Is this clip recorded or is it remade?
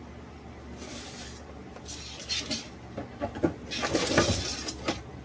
recorded